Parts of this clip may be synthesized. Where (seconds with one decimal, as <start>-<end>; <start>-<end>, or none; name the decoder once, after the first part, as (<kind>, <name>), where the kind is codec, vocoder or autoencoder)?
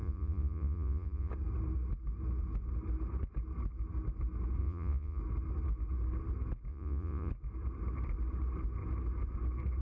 0.0-1.3 (vocoder, Vocos); 4.6-5.2; 6.7-7.3